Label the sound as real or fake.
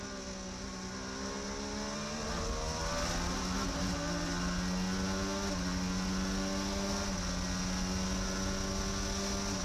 real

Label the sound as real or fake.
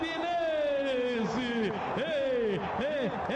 real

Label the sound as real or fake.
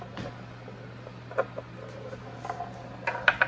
real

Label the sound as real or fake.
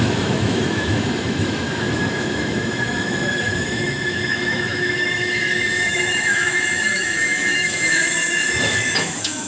fake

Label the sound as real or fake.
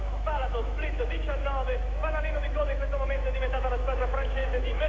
fake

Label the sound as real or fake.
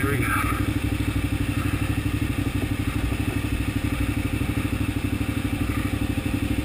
real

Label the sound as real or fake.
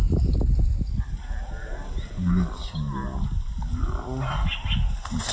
real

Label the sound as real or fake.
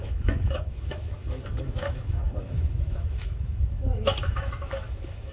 fake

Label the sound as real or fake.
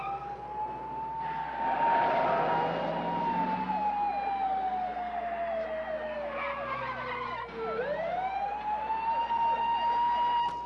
real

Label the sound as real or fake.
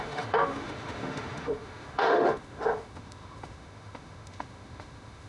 fake